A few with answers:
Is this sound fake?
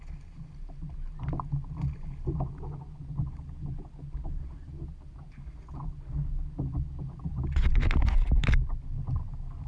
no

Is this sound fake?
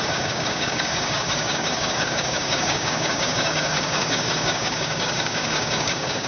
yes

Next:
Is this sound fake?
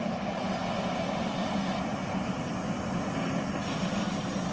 no